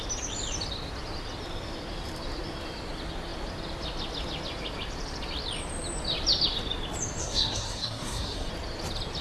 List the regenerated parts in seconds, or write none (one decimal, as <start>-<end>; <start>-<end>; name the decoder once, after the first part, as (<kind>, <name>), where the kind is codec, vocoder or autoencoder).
7.2-8.5 (codec, SNAC)